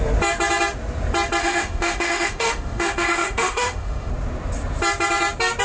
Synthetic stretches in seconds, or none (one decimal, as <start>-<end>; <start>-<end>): 1.4-4.1